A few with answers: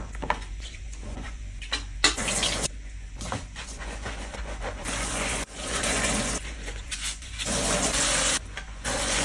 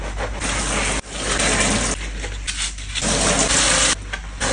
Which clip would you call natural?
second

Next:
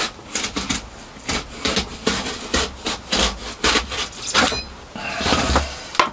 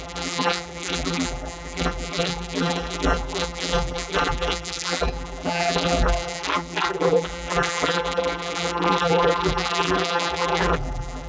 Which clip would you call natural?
first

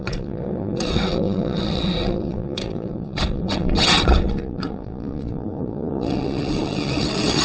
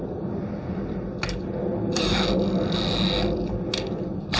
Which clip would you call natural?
second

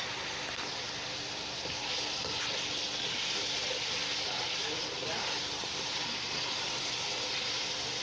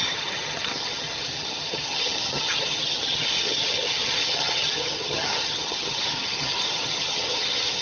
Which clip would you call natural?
first